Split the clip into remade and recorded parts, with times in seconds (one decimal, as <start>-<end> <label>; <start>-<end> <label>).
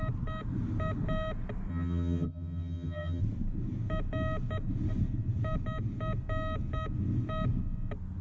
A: 0.0-1.7 recorded; 1.7-3.2 remade; 3.2-8.2 recorded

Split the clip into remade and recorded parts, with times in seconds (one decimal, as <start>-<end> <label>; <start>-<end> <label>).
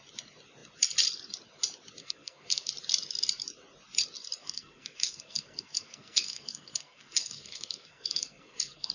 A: 0.0-2.0 recorded; 2.0-2.7 remade; 2.7-4.4 recorded; 4.4-8.9 remade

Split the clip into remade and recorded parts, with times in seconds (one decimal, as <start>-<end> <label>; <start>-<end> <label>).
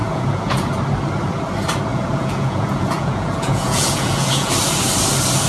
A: 0.0-0.7 remade; 0.7-1.9 recorded; 1.9-4.5 remade; 4.5-5.5 recorded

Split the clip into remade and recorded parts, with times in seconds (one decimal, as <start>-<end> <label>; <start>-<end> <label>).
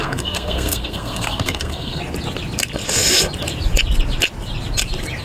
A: 0.0-2.0 remade; 2.0-5.2 recorded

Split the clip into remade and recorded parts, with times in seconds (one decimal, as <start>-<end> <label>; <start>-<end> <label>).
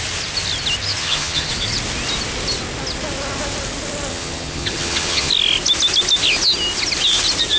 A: 0.0-1.0 recorded; 1.0-1.5 remade; 1.5-4.1 recorded; 4.1-5.3 remade; 5.3-7.6 recorded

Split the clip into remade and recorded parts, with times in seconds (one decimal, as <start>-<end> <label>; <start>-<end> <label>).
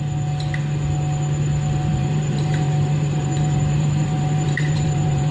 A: 0.0-1.9 recorded; 1.9-5.3 remade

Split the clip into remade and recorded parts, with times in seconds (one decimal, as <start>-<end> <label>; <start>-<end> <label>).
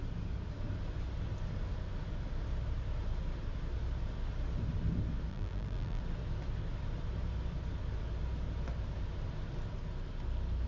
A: 0.0-5.3 recorded; 5.3-6.0 remade; 6.0-10.7 recorded